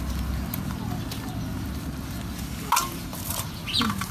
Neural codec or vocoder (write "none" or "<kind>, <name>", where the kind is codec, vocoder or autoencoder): none